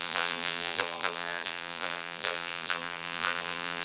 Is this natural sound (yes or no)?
no